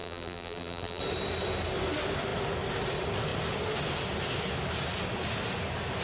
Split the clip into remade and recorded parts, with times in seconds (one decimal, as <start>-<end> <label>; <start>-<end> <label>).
0.0-1.0 remade; 1.0-6.0 recorded